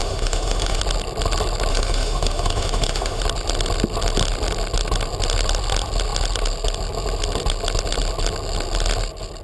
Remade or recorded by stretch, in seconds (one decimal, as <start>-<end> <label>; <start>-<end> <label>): 0.0-0.8 remade; 0.8-1.7 recorded; 1.7-3.2 remade; 3.2-9.4 recorded